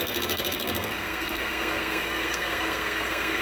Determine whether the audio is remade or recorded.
remade